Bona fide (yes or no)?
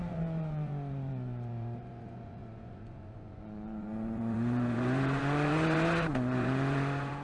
no